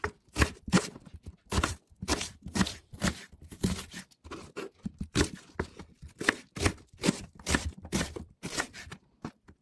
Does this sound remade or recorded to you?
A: remade